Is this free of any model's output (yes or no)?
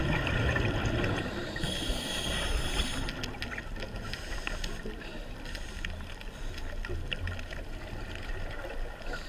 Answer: yes